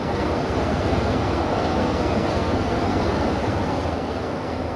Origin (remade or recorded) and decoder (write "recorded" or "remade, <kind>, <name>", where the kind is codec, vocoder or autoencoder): remade, codec, SNAC